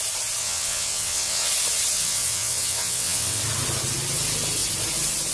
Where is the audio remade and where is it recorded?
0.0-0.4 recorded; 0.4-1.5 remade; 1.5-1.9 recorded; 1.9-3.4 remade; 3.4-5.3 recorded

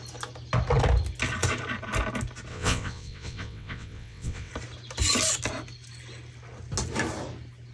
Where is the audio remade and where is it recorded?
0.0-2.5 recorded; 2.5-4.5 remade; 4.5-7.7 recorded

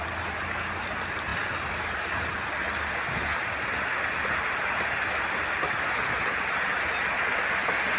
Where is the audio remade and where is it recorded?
0.0-8.0 recorded

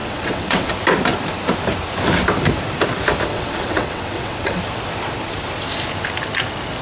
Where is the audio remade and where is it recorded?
0.0-0.7 remade; 0.7-3.3 recorded; 3.3-4.6 remade; 4.6-6.8 recorded

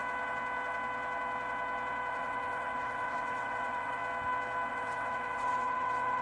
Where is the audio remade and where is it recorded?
0.0-2.1 recorded; 2.1-4.0 remade; 4.0-4.7 recorded; 4.7-6.2 remade

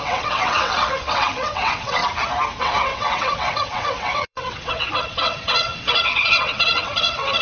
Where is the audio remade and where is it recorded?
0.0-2.0 remade; 2.0-2.6 recorded; 2.6-7.4 remade